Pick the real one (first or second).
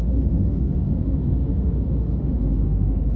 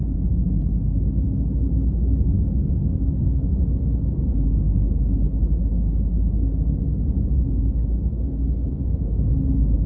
second